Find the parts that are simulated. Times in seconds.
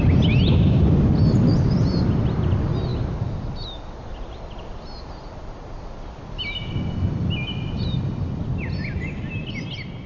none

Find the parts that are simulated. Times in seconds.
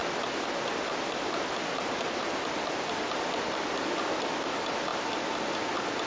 none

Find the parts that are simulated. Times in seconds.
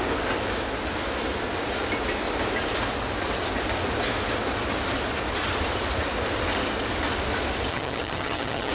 7.7-8.7 (vocoder, HiFi-GAN)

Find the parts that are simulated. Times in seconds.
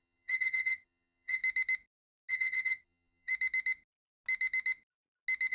0.0-1.4 (vocoder, HiFi-GAN); 2.3-3.3